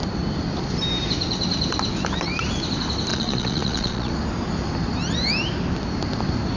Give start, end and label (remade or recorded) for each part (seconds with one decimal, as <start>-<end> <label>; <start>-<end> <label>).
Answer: 0.0-3.1 recorded; 3.1-4.1 remade; 4.1-6.6 recorded